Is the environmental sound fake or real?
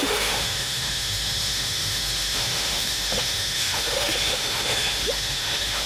fake